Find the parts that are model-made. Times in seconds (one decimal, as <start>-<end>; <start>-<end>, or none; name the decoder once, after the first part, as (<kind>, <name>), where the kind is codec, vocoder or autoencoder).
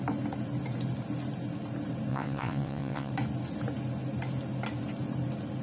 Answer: 2.1-3.1 (vocoder, WaveNeXt)